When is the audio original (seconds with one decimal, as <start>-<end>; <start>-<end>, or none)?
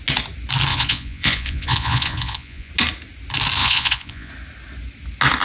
0.0-0.7; 2.7-3.6; 4.3-5.4